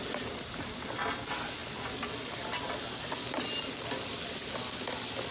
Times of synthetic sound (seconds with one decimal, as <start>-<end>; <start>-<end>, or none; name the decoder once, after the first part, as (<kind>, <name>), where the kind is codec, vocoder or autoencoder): none